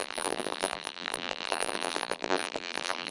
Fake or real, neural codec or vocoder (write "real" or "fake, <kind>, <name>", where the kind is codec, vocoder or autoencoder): fake, vocoder, BigVGAN v2